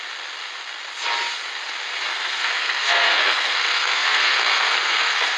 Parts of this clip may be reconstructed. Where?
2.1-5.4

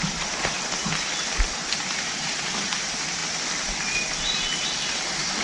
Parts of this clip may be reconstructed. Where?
0.0-0.9; 1.5-3.2; 4.4-5.4

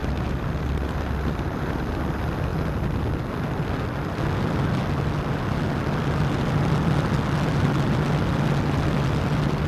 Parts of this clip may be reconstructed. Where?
none

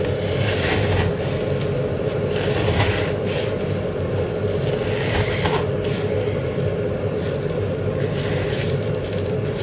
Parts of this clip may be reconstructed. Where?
none

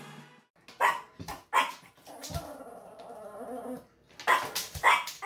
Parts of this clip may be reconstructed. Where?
none